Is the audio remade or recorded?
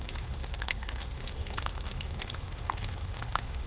remade